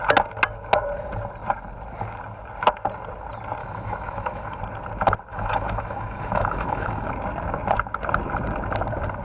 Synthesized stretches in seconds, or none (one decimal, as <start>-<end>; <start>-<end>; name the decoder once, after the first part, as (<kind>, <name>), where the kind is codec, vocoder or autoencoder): 3.6-4.6 (autoencoder, DAC-VAE); 5.3-7.1